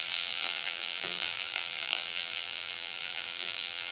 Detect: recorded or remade remade